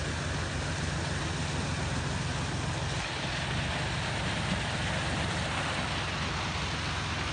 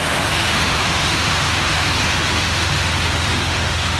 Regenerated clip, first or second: second